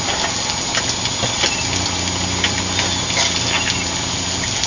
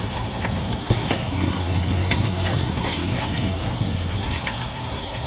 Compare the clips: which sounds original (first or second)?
first